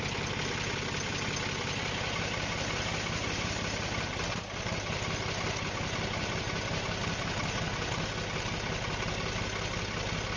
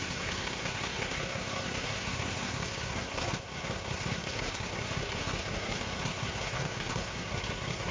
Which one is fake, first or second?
second